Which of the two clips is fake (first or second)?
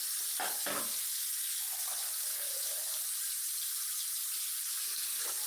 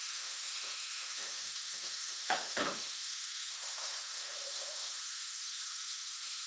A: second